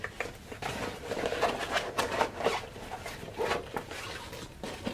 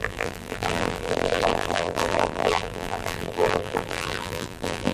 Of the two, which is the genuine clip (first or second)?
first